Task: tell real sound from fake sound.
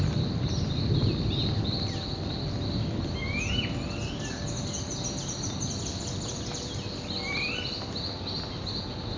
real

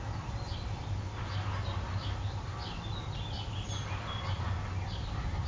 real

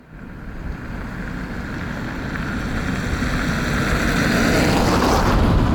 real